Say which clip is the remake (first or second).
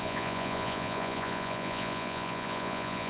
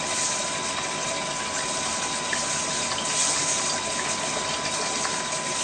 first